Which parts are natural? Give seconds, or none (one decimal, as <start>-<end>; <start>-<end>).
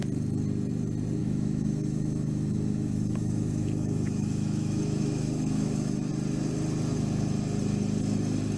0.0-1.2; 6.1-8.6